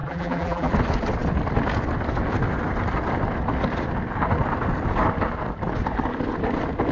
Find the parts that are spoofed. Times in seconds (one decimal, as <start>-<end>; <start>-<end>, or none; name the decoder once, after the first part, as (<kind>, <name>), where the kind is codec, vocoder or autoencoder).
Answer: 0.0-0.7 (vocoder, BigVGAN v2)